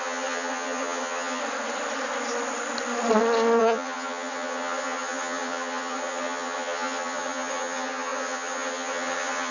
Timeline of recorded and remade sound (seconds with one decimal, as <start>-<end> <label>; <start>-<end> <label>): 0.0-1.4 remade; 1.4-3.6 recorded; 3.6-9.5 remade